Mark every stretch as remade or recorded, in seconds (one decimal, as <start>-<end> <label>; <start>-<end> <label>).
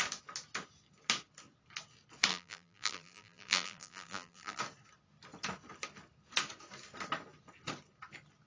0.0-2.3 recorded; 2.3-4.6 remade; 4.6-8.5 recorded